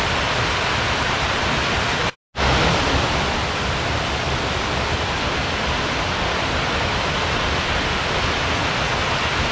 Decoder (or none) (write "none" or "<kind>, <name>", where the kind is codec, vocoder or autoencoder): none